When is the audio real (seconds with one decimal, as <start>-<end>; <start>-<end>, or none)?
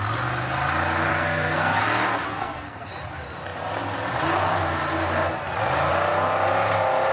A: 0.0-1.1; 1.8-2.3; 2.9-7.1